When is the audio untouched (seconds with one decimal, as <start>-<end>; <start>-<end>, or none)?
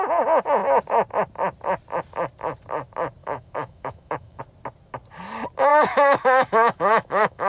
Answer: 0.0-3.2; 4.4-5.7